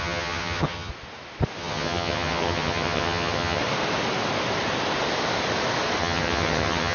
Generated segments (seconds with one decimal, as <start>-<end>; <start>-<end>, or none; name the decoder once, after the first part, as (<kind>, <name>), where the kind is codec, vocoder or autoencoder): 0.0-0.9 (vocoder, HiFi-GAN); 1.6-3.6; 6.0-6.9